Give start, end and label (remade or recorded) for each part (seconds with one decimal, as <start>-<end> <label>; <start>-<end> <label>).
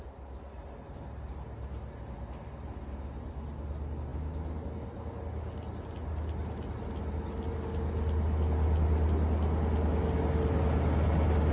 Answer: 0.0-11.5 recorded